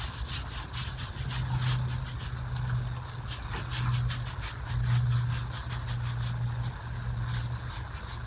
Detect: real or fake real